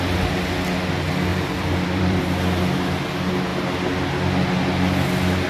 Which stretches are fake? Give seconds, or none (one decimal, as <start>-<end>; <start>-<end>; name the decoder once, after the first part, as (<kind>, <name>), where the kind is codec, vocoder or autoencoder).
1.3-2.2 (vocoder, BigVGAN v2)